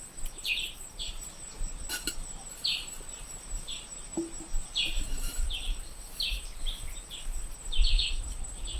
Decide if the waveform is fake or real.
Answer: fake